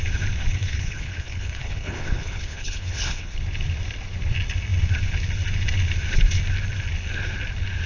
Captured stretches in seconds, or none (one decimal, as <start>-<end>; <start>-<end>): 0.0-0.5; 3.4-7.9